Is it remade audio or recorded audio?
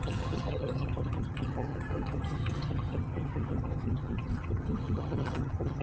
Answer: remade